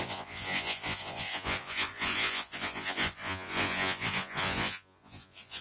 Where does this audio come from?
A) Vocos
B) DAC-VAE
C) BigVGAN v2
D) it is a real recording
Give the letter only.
A